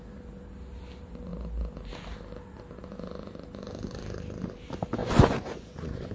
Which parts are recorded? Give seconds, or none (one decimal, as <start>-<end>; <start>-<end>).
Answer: 0.0-5.0